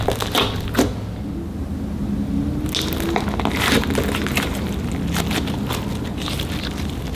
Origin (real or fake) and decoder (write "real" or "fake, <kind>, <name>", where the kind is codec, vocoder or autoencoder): real